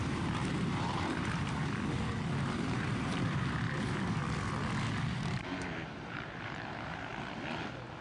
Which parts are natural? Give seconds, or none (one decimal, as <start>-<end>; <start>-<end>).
1.6-2.4; 4.2-5.1; 7.1-8.0